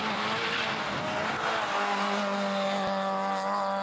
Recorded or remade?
recorded